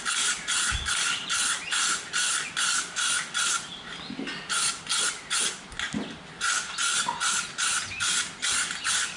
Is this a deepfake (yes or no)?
no